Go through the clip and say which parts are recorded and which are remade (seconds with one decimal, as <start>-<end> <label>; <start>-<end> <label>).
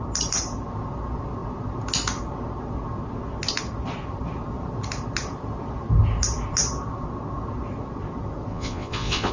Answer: 0.0-8.5 recorded; 8.5-9.3 remade